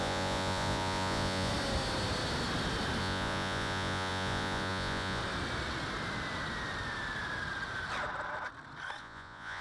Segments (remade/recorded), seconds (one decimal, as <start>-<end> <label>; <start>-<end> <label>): 0.0-1.5 remade; 1.5-3.0 recorded; 3.0-5.2 remade; 5.2-9.0 recorded; 9.0-9.6 remade